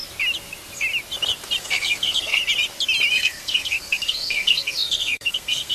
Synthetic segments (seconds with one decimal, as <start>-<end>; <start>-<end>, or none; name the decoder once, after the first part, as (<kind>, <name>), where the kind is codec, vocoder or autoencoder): 1.6-2.4 (codec, SNAC); 3.1-5.7